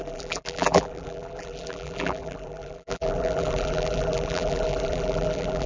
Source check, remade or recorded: remade